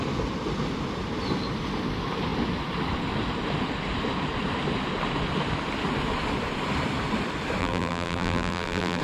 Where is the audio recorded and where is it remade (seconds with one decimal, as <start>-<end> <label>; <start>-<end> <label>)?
0.0-7.6 recorded; 7.6-9.0 remade